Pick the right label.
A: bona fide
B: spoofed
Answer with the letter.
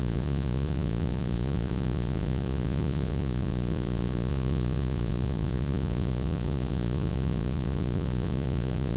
B